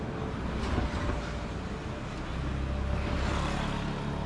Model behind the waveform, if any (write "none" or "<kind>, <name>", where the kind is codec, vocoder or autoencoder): none